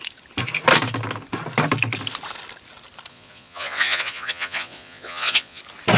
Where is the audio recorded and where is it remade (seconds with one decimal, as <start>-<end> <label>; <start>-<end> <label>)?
0.0-3.1 recorded; 3.1-5.6 remade; 5.6-6.0 recorded